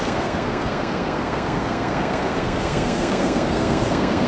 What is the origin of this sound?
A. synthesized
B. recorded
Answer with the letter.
A